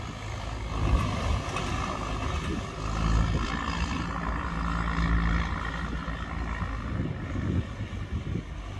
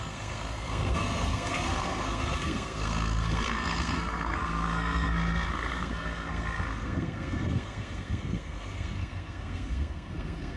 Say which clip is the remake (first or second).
second